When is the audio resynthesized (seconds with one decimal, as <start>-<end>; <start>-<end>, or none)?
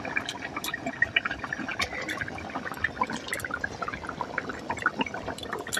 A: none